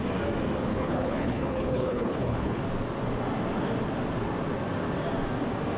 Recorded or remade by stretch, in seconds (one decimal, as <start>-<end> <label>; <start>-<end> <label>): 0.0-0.7 recorded; 0.7-2.6 remade; 2.6-5.8 recorded